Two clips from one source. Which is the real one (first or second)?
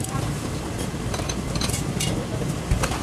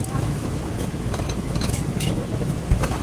first